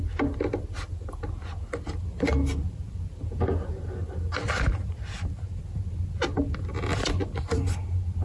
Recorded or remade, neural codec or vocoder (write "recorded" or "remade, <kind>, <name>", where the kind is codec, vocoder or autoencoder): recorded